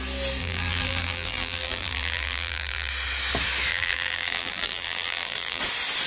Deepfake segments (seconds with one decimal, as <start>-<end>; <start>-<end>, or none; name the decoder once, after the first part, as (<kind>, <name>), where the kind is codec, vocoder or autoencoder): 0.4-2.9 (vocoder, BigVGAN v2); 3.7-5.6